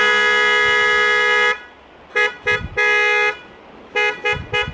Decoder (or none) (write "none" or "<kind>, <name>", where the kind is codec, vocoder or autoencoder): none